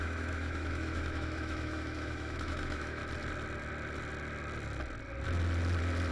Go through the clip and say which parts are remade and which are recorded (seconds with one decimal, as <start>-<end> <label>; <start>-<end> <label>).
0.0-3.0 remade; 3.0-6.1 recorded